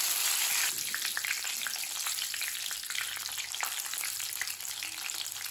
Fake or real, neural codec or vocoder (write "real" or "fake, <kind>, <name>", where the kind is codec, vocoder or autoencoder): real